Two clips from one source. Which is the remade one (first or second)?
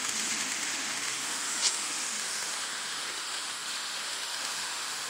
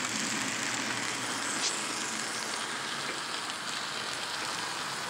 first